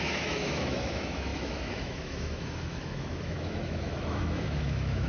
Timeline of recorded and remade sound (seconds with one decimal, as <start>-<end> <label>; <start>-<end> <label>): 0.0-5.1 remade